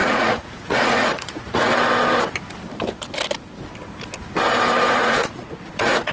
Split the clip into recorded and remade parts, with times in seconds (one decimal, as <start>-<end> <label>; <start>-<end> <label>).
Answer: 0.0-1.7 remade; 1.7-4.9 recorded; 4.9-6.1 remade